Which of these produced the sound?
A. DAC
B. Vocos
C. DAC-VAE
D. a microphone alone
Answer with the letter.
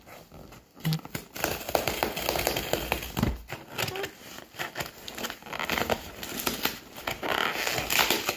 D